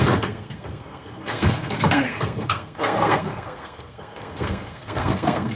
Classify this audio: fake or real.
fake